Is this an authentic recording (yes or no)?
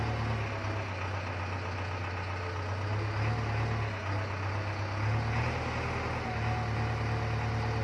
yes